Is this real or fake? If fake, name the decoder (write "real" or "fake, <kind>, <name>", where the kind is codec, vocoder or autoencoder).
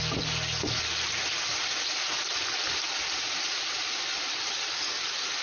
real